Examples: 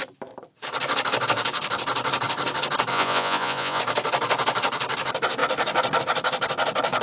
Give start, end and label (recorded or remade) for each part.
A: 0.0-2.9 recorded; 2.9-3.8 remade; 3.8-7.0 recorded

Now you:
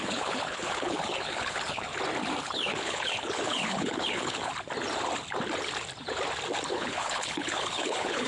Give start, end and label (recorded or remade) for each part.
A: 0.0-1.9 remade; 1.9-2.4 recorded; 2.4-4.5 remade; 4.5-6.7 recorded; 6.7-8.3 remade

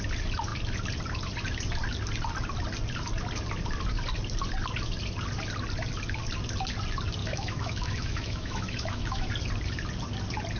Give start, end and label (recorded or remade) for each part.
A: 0.0-7.2 recorded; 7.2-9.3 remade; 9.3-10.6 recorded